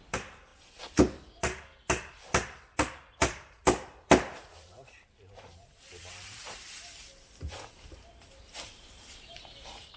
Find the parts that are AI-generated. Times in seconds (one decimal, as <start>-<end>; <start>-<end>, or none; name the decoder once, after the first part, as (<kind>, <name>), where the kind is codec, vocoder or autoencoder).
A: 0.0-0.5 (vocoder, BigVGAN v2); 3.2-6.9; 7.7-10.0